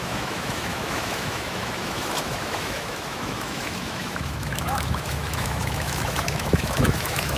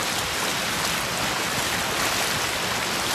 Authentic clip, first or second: second